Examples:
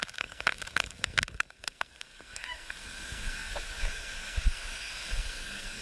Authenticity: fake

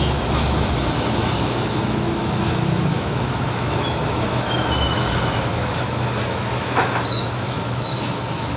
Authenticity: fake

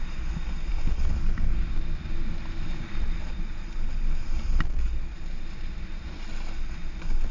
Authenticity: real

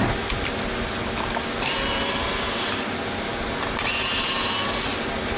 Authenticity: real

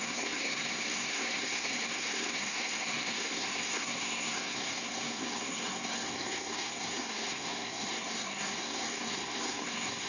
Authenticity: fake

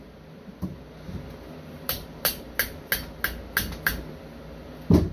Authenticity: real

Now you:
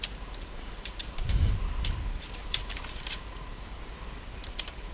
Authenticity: fake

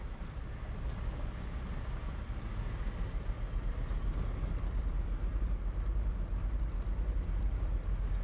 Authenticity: real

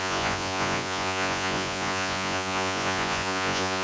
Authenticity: fake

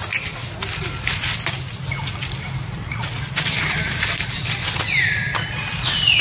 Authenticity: real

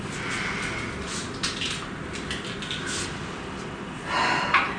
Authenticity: real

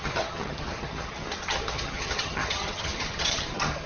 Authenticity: fake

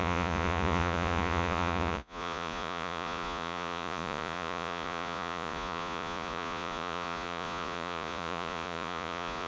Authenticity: fake